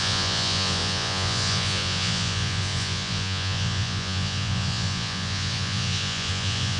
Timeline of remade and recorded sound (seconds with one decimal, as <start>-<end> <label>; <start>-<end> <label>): 0.0-6.8 remade